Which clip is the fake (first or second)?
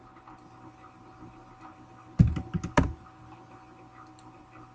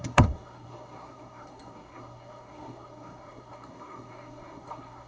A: second